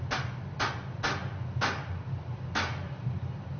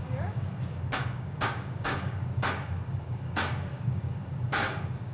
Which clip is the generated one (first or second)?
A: second